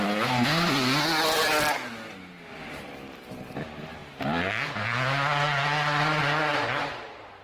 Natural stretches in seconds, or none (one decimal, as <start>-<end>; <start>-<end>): 0.0-7.4